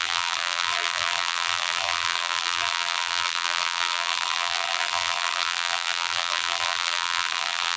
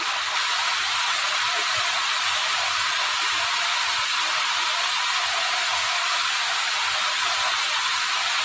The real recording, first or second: second